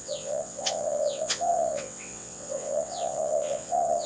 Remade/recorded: remade